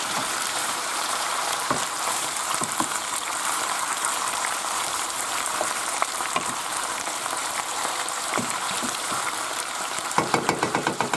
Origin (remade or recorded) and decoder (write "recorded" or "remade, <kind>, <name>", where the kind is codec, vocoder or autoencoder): remade, vocoder, BigVGAN v2